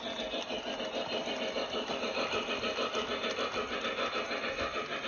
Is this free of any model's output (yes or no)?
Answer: yes